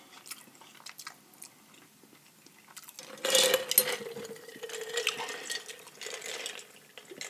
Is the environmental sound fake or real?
real